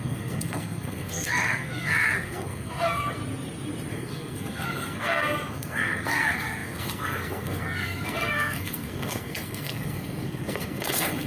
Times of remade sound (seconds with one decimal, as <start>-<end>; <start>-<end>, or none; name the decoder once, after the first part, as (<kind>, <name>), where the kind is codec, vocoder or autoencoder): 0.0-3.2 (codec, SNAC); 3.9-11.3